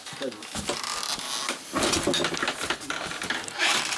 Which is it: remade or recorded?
recorded